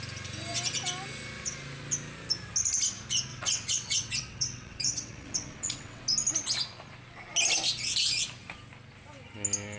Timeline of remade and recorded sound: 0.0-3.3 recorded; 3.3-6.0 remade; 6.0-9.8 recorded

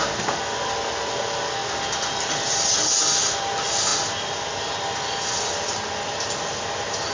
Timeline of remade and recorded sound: 0.0-7.1 recorded

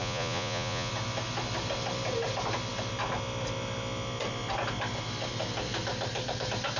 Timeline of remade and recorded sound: 0.0-0.9 remade; 0.9-6.8 recorded

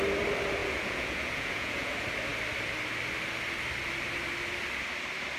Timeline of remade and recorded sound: 0.0-0.6 recorded; 0.6-1.9 remade; 1.9-5.4 recorded

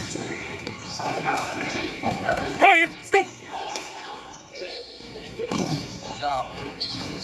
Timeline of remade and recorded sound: 0.0-7.2 remade

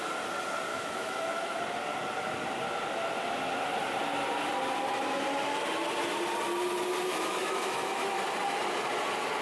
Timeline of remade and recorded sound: 0.0-0.7 recorded; 0.7-1.6 remade; 1.6-7.1 recorded; 7.1-8.2 remade; 8.2-9.4 recorded

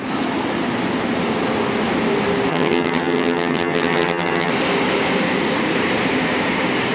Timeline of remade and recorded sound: 0.0-2.5 recorded; 2.5-4.5 remade; 4.5-6.9 recorded

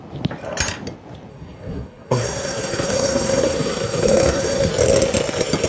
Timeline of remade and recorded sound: 0.0-1.3 recorded; 1.3-4.7 remade; 4.7-5.7 recorded